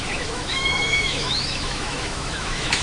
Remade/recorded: remade